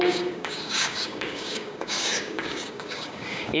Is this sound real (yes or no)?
no